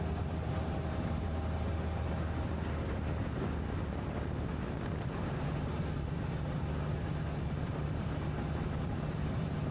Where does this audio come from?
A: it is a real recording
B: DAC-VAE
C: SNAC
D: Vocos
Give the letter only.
A